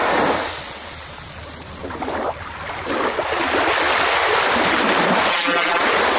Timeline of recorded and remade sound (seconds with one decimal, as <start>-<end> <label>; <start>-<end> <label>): 0.0-5.3 recorded; 5.3-5.8 remade; 5.8-6.2 recorded